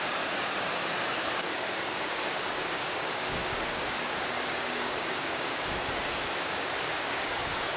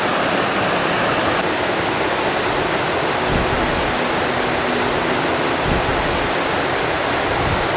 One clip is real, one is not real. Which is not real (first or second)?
first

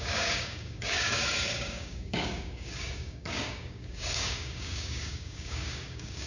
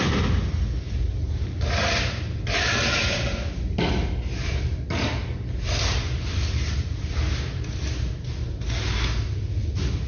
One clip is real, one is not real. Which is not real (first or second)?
first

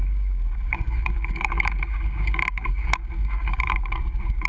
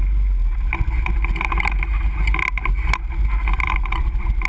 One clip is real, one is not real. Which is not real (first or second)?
first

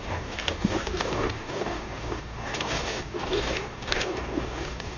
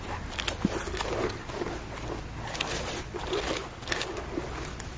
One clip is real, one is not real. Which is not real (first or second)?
first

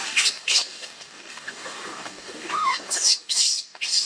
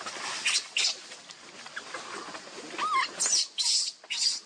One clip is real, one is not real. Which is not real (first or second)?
first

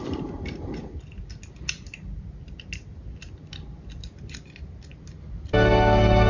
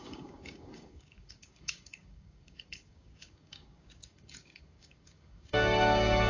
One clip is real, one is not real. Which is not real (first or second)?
second